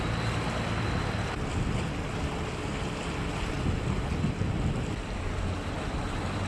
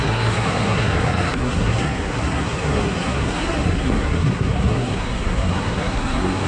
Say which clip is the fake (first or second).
second